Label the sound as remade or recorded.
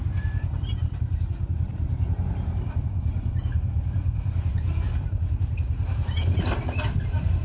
remade